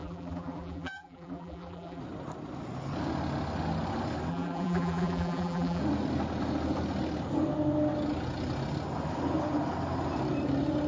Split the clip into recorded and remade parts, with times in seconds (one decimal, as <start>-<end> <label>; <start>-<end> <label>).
0.0-2.0 remade; 2.0-4.3 recorded; 4.3-5.8 remade; 5.8-10.9 recorded